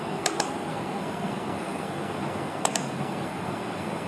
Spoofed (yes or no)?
yes